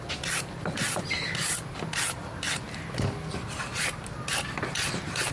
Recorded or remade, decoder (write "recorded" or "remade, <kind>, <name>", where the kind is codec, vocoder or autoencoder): recorded